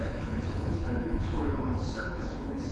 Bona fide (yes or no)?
no